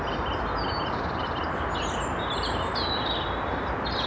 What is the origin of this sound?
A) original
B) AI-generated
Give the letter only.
A